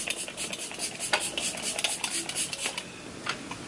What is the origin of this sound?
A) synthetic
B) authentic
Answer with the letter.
B